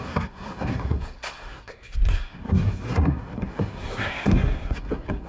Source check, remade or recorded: remade